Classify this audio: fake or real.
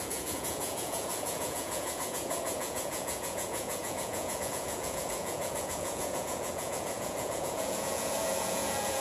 fake